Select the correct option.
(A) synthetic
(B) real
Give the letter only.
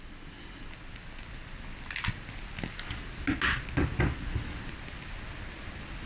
B